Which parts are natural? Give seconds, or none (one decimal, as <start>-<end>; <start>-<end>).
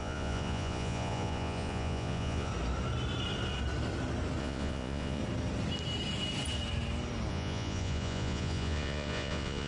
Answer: 2.5-4.4; 5.2-7.3